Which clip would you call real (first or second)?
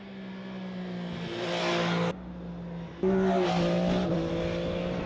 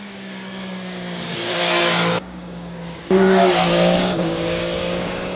first